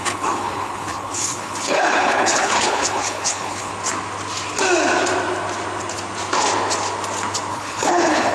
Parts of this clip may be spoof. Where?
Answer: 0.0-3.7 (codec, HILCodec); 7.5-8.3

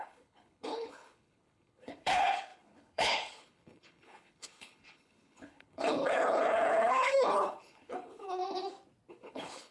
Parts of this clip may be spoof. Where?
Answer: 0.0-8.4 (codec, HILCodec); 9.1-9.7

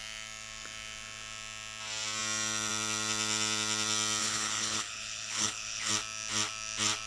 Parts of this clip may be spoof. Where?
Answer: 4.2-5.9 (codec, HILCodec)

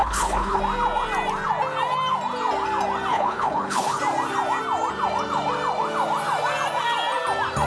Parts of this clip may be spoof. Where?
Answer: 0.0-0.6 (codec, HILCodec); 3.1-4.0

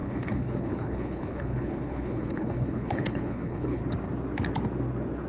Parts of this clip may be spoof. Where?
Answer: 0.0-3.8 (codec, HILCodec)